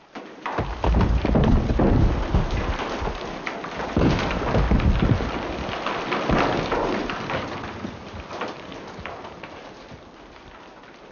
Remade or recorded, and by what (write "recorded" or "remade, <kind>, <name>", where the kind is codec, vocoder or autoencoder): recorded